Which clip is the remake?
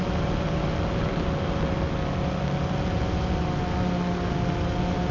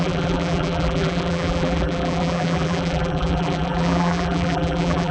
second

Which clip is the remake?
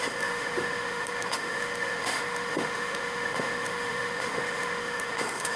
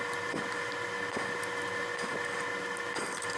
first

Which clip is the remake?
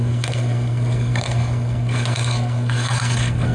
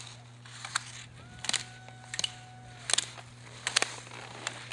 first